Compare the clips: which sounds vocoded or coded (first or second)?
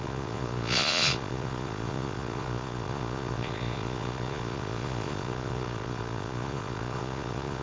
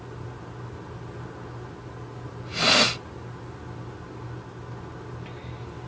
first